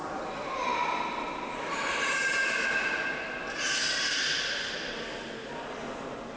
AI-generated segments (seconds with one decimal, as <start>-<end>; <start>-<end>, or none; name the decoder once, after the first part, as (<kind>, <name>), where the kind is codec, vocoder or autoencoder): 0.0-0.7 (vocoder, BigVGAN v2); 1.3-2.3